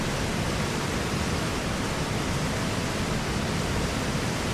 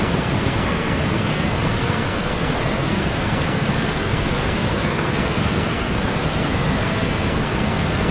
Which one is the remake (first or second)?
second